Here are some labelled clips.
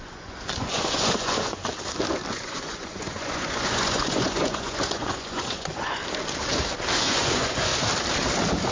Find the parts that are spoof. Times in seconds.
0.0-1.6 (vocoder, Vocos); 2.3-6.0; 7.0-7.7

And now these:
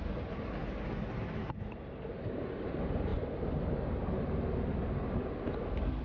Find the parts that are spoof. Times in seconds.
none

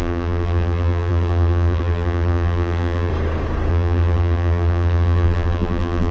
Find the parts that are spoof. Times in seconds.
0.0-3.1 (vocoder, BigVGAN v2); 3.7-6.1

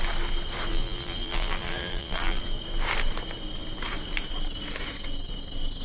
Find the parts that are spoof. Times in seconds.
0.7-2.4 (vocoder, BigVGAN v2)

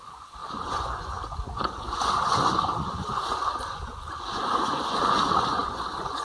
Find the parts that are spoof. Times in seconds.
0.0-6.2 (vocoder, Vocos)

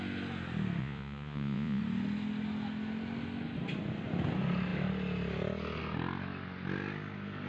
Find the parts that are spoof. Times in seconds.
0.8-1.8 (vocoder, Vocos)

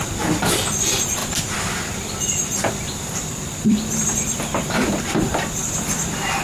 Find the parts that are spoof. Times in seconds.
1.2-2.2 (vocoder, BigVGAN v2); 2.6-6.4